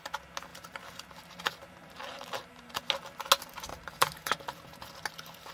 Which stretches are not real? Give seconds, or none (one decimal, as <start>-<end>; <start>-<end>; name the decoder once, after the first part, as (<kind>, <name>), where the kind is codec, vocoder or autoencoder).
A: 0.5-2.8 (vocoder, BigVGAN v2); 3.7-4.3